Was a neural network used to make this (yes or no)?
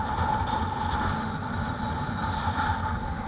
no